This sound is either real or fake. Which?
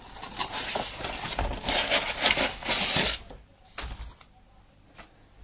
real